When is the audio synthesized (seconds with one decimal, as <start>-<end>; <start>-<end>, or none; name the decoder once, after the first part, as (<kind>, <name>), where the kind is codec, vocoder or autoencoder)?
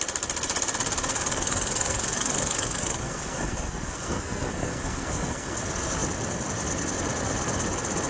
1.1-5.6 (codec, SNAC)